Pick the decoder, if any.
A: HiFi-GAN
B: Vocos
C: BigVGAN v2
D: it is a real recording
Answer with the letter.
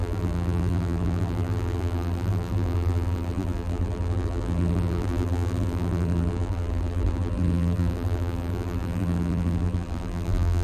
C